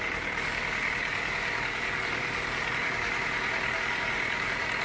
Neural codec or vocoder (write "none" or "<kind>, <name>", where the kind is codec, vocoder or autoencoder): codec, DAC